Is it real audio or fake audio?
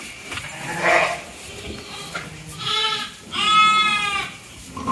real